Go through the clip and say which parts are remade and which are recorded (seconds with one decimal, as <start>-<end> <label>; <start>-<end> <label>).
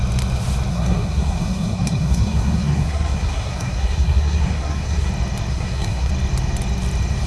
0.0-0.7 recorded; 0.7-5.1 remade; 5.1-5.5 recorded; 5.5-6.1 remade; 6.1-7.3 recorded